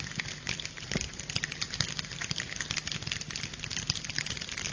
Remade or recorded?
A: recorded